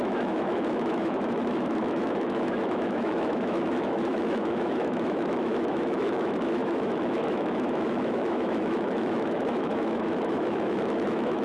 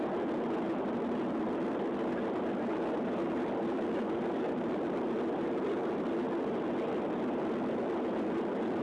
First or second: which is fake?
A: first